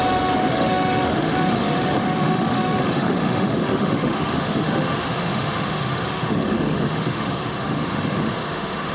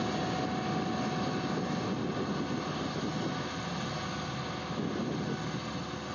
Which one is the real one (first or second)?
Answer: second